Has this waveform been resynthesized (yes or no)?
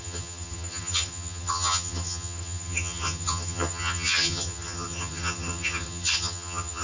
yes